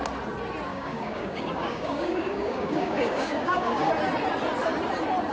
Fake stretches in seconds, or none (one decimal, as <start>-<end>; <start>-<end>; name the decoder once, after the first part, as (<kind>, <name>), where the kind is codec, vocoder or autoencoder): 0.7-3.9 (codec, DAC)